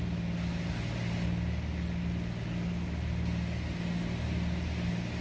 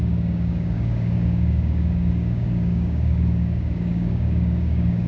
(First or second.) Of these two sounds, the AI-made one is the second